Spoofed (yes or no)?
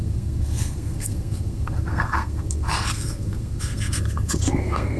yes